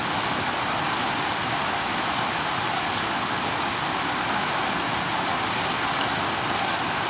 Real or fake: real